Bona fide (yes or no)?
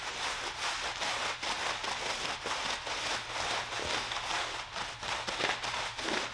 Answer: yes